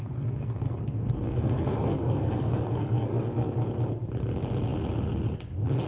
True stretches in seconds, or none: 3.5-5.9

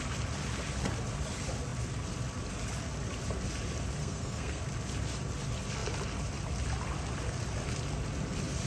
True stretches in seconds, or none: 0.0-4.0; 4.6-8.7

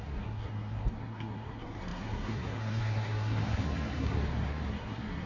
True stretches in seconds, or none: none